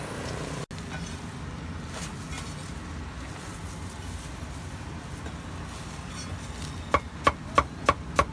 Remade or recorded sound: recorded